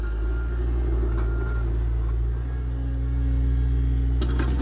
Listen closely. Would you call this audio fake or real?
real